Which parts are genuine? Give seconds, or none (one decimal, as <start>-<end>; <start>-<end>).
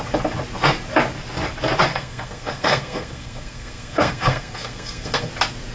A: 0.0-1.9; 5.3-5.7